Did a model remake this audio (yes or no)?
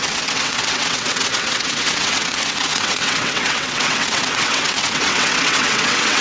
yes